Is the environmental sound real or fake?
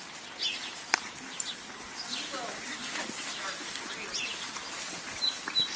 real